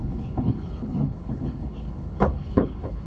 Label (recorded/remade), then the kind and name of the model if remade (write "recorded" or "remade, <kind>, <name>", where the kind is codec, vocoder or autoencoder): remade, codec, HILCodec